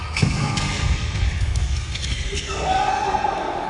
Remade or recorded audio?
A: remade